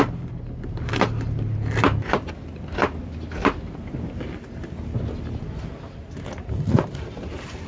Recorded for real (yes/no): yes